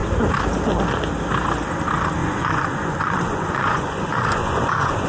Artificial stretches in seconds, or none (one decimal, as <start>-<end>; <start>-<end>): 2.2-5.1